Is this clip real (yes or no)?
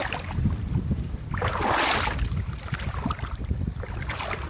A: no